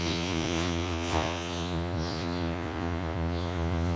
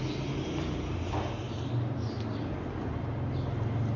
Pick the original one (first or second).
second